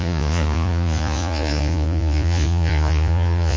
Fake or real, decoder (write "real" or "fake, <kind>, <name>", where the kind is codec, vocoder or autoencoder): fake, vocoder, Vocos